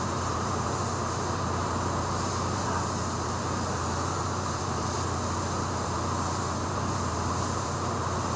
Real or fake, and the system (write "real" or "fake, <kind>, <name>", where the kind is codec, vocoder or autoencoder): fake, vocoder, BigVGAN v2